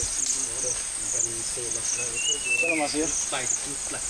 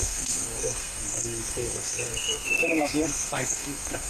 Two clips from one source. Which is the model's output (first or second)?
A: second